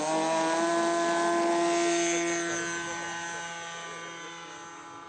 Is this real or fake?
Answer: real